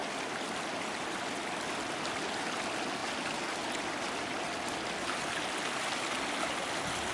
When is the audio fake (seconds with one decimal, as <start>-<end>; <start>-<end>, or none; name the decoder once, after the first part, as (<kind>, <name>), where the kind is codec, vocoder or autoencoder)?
0.0-2.4 (vocoder, BigVGAN v2)